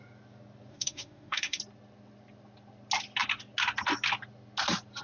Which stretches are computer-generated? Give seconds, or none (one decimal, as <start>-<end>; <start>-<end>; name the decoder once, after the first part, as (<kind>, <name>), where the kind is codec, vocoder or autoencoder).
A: 0.7-1.6 (autoencoder, DAC-VAE)